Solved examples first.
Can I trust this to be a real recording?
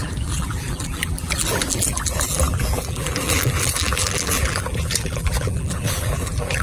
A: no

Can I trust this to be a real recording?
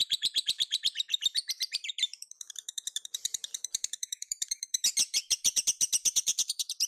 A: no